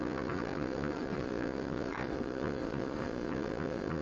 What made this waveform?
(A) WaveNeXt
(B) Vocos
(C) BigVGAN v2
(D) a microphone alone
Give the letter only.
B